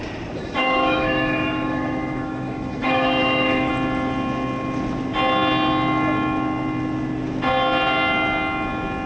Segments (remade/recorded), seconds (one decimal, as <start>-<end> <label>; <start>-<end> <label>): 0.0-0.4 recorded; 0.4-3.7 remade; 3.7-9.1 recorded